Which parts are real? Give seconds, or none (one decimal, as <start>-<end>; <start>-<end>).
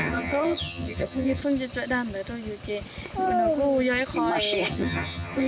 1.4-4.7